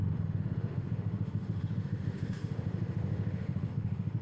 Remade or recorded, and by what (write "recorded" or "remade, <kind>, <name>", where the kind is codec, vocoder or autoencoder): remade, autoencoder, DAC-VAE